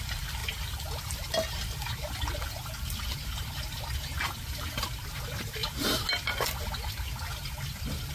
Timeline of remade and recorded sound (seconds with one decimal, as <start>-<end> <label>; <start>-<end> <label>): 0.0-0.4 recorded; 0.4-1.0 remade; 1.0-8.1 recorded